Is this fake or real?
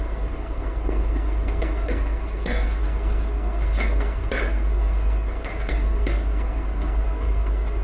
fake